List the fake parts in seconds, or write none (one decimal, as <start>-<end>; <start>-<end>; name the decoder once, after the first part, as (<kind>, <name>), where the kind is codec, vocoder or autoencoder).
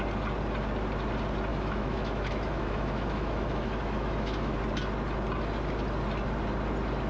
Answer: 1.5-4.6 (autoencoder, DAC-VAE)